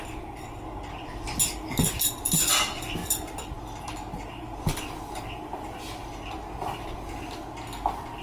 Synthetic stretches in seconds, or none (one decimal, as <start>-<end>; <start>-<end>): 3.0-3.9